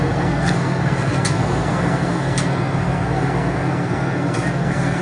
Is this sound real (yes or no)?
no